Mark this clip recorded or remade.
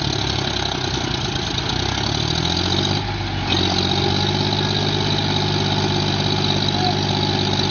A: recorded